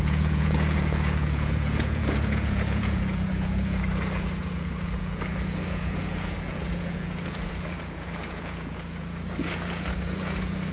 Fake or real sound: fake